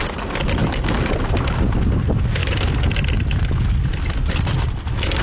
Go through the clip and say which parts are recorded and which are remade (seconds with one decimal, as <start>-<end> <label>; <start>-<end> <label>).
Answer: 0.0-0.6 recorded; 0.6-1.1 remade; 1.1-5.2 recorded

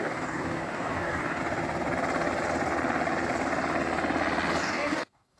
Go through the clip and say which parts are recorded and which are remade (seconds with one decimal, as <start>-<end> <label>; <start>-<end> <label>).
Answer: 0.0-1.4 remade; 1.4-4.6 recorded; 4.6-5.4 remade

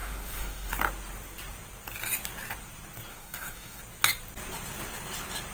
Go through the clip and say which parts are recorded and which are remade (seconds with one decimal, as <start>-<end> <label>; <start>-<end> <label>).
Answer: 0.0-0.7 remade; 0.7-3.1 recorded; 3.1-3.8 remade; 3.8-5.5 recorded

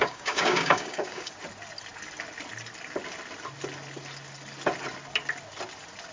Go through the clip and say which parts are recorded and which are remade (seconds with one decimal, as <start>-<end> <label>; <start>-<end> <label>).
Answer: 0.0-1.3 remade; 1.3-6.1 recorded

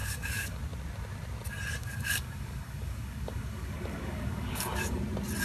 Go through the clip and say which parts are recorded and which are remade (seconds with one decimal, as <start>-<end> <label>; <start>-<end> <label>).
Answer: 0.0-0.6 remade; 0.6-1.8 recorded; 1.8-5.0 remade; 5.0-5.4 recorded